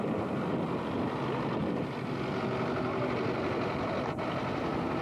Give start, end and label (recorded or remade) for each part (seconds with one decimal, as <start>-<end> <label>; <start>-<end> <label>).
0.0-1.6 recorded; 1.6-3.9 remade; 3.9-5.0 recorded

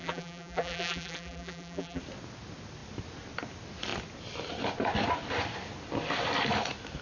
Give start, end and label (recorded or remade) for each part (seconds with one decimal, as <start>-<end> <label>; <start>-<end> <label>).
0.0-2.0 remade; 2.0-7.0 recorded

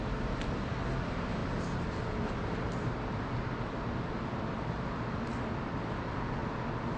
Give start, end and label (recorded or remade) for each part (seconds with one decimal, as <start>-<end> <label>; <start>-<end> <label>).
0.0-1.4 recorded; 1.4-2.9 remade; 2.9-7.0 recorded

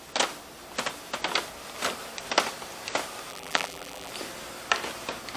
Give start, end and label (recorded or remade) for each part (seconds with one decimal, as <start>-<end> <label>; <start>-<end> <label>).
0.0-3.3 recorded; 3.3-4.1 remade; 4.1-5.4 recorded

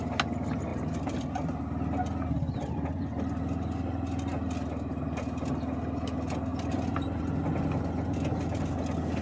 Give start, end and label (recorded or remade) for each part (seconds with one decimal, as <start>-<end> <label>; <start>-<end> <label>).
0.0-0.7 recorded; 0.7-1.6 remade; 1.6-6.5 recorded; 6.5-7.2 remade; 7.2-9.2 recorded